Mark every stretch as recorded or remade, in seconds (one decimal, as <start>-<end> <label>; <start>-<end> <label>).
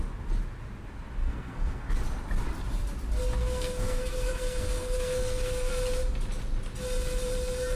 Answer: 0.0-1.2 recorded; 1.2-1.9 remade; 1.9-3.4 recorded; 3.4-5.7 remade; 5.7-7.8 recorded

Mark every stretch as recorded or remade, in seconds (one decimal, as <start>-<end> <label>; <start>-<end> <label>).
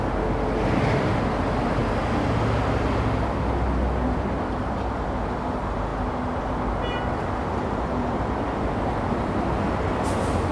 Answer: 0.0-10.5 recorded